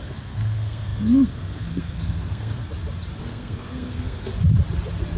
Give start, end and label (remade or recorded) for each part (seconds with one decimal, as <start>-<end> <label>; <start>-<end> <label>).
0.0-2.6 remade; 2.6-3.2 recorded; 3.2-4.3 remade; 4.3-5.2 recorded

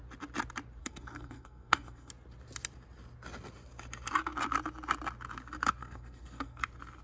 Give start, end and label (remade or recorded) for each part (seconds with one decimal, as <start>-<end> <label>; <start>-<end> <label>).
0.0-0.8 recorded; 0.8-2.1 remade; 2.1-5.8 recorded; 5.8-6.6 remade; 6.6-7.0 recorded

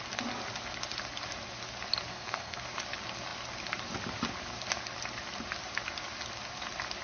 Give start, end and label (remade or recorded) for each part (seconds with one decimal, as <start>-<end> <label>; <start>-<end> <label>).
0.0-2.1 recorded; 2.1-2.6 remade; 2.6-7.0 recorded

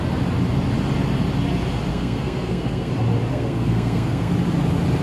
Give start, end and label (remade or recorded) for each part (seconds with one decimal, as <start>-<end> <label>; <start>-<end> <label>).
0.0-1.9 recorded; 1.9-2.9 remade; 2.9-3.3 recorded; 3.3-4.3 remade; 4.3-5.0 recorded

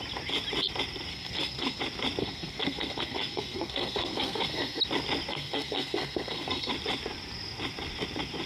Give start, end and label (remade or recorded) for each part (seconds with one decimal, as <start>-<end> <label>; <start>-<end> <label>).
0.0-1.1 recorded; 1.1-1.8 remade; 1.8-2.2 recorded; 2.2-4.8 remade; 4.8-5.3 recorded; 5.3-6.7 remade; 6.7-8.5 recorded

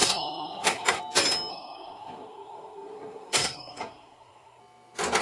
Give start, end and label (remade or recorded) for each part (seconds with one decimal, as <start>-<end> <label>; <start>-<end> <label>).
0.0-1.0 remade; 1.0-1.5 recorded; 1.5-4.6 remade; 4.6-5.2 recorded

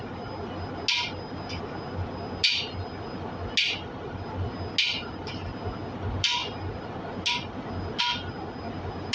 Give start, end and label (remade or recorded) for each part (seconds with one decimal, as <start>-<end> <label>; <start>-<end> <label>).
0.0-9.1 recorded

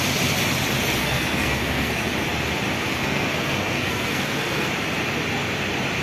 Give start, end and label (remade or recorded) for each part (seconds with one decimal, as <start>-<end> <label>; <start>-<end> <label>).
0.0-1.0 recorded; 1.0-2.1 remade; 2.1-2.9 recorded; 2.9-4.7 remade; 4.7-6.0 recorded